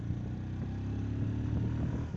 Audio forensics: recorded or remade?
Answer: recorded